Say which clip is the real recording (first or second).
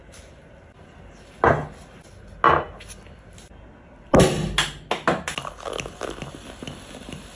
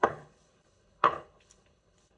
first